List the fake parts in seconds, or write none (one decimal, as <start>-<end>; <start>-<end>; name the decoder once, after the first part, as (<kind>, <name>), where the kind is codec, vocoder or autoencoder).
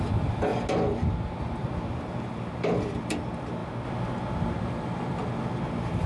0.0-0.5 (vocoder, BigVGAN v2); 1.6-3.6; 4.3-6.1